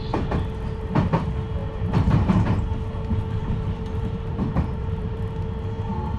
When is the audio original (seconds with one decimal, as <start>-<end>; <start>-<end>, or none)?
0.0-1.6; 2.6-3.4; 5.2-6.2